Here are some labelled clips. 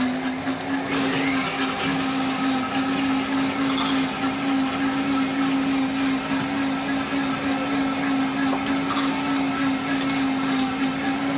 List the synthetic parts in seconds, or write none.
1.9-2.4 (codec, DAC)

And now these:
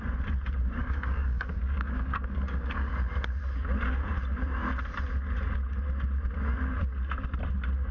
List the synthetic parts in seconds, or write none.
0.8-2.9 (codec, DAC)

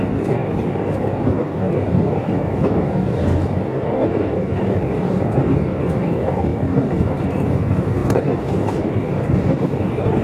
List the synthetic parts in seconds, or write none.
0.0-10.2 (codec, DAC)

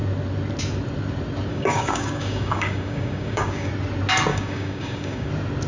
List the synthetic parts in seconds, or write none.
1.5-3.7 (codec, DAC); 4.3-5.3

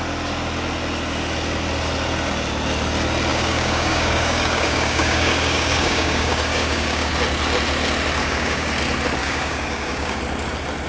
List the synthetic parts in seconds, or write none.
3.3-7.1 (codec, DAC); 8.2-8.7; 9.2-10.2